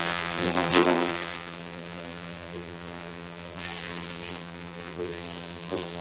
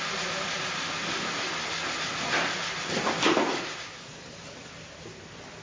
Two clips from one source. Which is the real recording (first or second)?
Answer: second